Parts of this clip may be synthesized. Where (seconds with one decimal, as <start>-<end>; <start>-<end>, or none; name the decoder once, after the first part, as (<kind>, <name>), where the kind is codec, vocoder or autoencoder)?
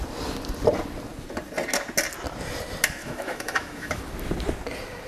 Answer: 3.0-4.0 (autoencoder, DAC-VAE)